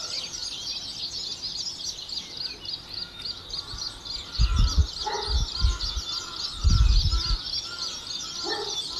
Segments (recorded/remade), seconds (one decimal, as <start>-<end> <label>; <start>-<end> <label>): 0.0-9.0 recorded